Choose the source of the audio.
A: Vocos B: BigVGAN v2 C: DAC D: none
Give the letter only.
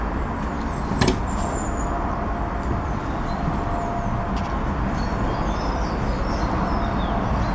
D